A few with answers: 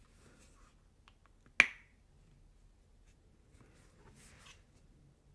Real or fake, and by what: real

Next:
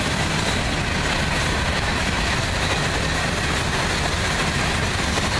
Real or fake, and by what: real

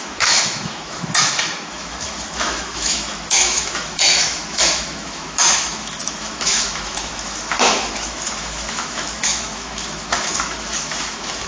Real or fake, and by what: fake, autoencoder, DAC-VAE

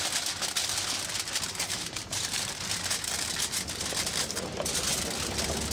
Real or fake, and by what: real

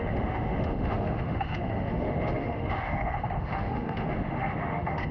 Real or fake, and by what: fake, autoencoder, DAC-VAE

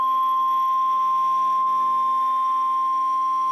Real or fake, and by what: fake, autoencoder, DAC-VAE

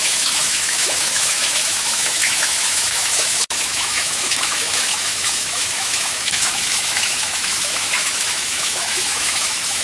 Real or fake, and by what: fake, autoencoder, DAC-VAE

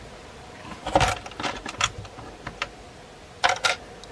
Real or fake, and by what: real